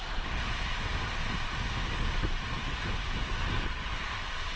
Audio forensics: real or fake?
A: real